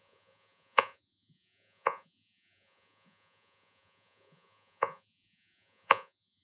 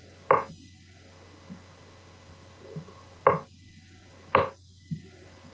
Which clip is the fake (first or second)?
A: first